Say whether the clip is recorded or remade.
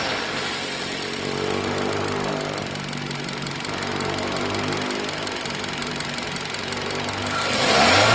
recorded